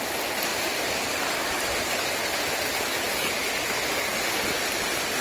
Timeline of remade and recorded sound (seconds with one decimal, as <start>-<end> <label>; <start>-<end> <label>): 0.0-5.2 recorded